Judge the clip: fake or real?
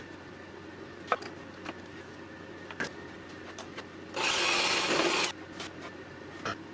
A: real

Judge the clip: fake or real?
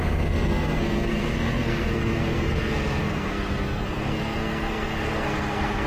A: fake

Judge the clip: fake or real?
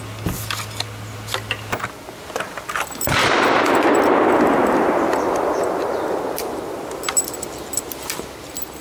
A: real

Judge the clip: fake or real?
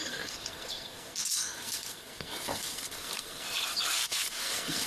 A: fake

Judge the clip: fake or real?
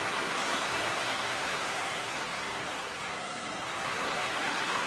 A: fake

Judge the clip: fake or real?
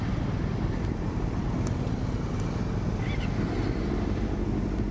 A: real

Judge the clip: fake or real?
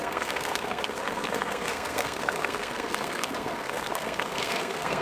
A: fake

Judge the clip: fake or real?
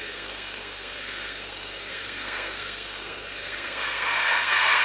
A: fake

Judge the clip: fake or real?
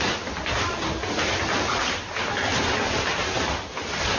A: real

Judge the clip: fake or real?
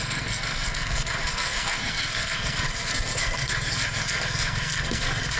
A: fake